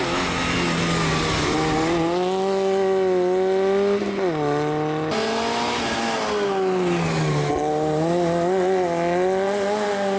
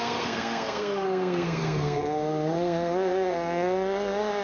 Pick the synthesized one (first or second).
second